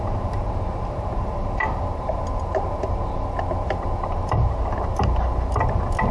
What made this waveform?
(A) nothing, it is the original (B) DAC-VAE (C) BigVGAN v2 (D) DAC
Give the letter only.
A